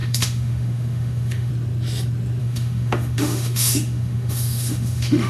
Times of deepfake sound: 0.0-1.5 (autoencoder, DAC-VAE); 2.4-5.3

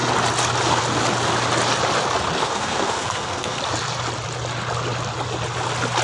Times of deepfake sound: 2.4-3.6 (codec, SNAC)